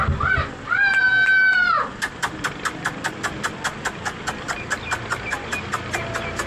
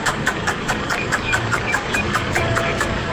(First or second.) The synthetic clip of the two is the second